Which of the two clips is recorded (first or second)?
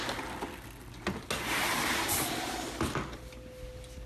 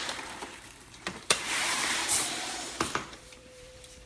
first